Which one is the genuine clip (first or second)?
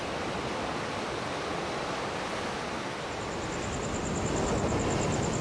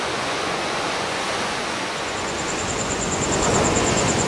first